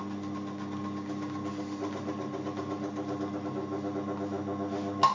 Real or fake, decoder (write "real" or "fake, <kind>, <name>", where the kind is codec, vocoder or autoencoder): real